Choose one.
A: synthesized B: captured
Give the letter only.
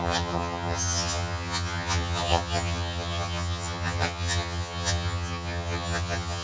A